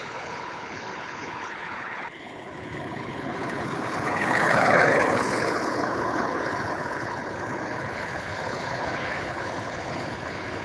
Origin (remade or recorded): remade